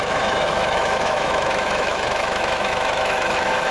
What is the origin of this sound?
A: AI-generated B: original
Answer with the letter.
A